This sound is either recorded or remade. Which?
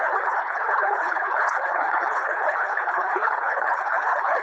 remade